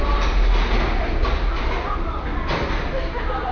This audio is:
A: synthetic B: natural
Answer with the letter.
B